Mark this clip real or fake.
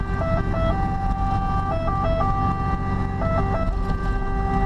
real